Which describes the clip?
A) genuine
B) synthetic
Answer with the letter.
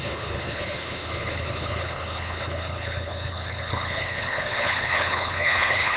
B